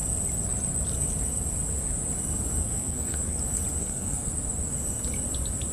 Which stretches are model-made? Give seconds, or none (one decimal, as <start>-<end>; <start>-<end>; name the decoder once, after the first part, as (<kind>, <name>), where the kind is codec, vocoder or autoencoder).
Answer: 2.6-3.4 (codec, SNAC); 3.8-4.3